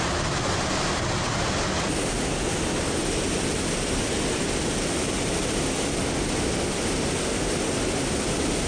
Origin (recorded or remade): recorded